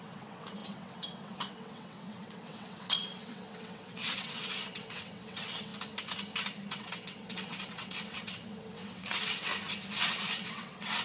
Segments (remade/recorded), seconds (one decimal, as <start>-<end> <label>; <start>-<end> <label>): 0.0-5.7 remade; 5.7-6.7 recorded; 6.7-9.5 remade; 9.5-10.0 recorded; 10.0-11.0 remade